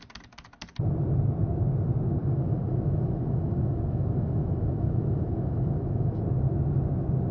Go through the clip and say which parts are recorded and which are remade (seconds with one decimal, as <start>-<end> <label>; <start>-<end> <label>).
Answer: 0.0-2.2 recorded; 2.2-6.2 remade; 6.2-7.3 recorded